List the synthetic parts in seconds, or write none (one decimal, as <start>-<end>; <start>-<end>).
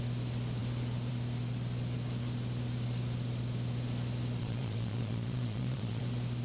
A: 4.4-6.0